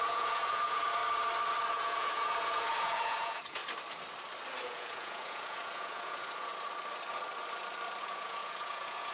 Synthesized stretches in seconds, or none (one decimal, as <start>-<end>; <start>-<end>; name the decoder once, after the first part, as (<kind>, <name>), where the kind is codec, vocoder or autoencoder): 0.0-1.0 (vocoder, Vocos); 1.7-3.6; 4.6-6.5; 8.0-9.1